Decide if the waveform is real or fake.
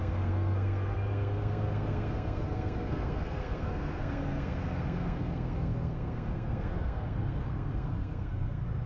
fake